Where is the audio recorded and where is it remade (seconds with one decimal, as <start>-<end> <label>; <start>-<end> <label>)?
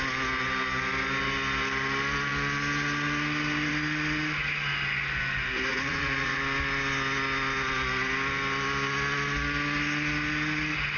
0.0-5.7 recorded; 5.7-6.4 remade; 6.4-11.0 recorded